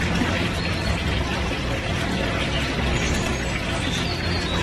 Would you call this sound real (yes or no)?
yes